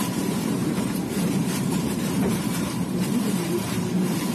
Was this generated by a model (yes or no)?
yes